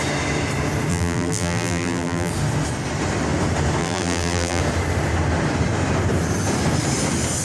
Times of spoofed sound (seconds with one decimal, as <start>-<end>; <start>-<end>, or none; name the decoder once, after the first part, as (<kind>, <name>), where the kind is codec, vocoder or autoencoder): 0.9-2.3 (vocoder, BigVGAN v2); 3.8-4.6